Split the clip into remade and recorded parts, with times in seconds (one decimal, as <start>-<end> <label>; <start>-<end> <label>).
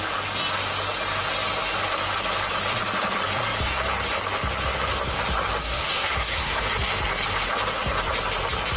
0.0-5.6 recorded; 5.6-6.6 remade; 6.6-8.8 recorded